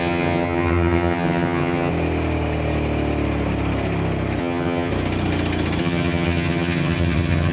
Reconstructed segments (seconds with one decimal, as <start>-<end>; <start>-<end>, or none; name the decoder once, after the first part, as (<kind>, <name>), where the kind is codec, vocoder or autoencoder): 0.0-1.9 (vocoder, HiFi-GAN); 4.4-4.9; 5.8-7.5